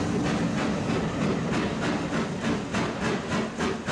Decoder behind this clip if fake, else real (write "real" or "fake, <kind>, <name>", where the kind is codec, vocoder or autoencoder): real